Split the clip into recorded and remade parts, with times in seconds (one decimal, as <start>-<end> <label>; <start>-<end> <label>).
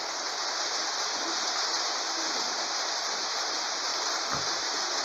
0.0-5.0 recorded